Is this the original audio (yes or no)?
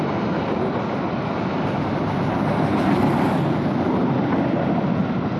yes